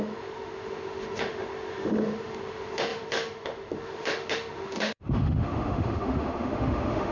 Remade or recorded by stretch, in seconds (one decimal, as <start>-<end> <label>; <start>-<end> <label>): 0.0-7.1 remade